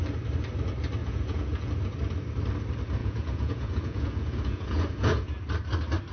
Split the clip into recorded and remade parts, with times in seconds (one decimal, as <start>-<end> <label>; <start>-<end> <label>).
0.0-1.0 recorded; 1.0-1.7 remade; 1.7-3.0 recorded; 3.0-5.3 remade; 5.3-6.1 recorded